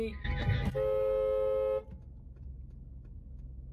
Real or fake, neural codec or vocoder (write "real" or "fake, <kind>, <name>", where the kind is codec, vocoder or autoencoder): real